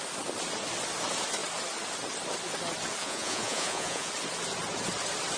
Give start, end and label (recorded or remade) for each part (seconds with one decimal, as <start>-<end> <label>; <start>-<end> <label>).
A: 0.0-3.0 recorded; 3.0-4.1 remade; 4.1-5.4 recorded